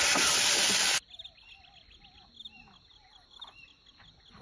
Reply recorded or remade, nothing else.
recorded